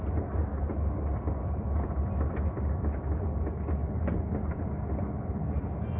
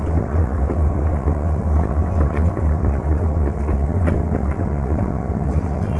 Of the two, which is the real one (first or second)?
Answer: first